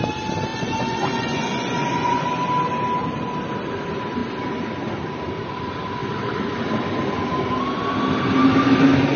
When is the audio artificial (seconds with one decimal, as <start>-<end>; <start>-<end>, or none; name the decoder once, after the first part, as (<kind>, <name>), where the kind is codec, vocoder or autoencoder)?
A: 0.5-2.3 (vocoder, Vocos)